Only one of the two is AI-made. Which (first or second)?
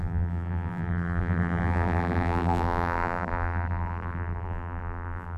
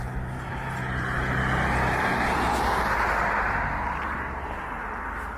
first